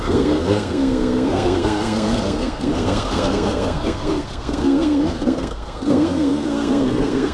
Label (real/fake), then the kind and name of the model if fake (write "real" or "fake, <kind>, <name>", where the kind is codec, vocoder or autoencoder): fake, codec, SNAC